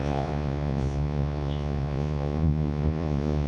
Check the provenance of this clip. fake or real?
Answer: fake